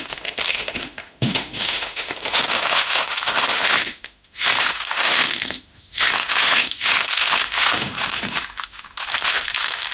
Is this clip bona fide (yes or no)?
no